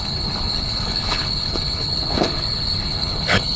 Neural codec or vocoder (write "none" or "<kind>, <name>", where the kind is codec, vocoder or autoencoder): codec, HILCodec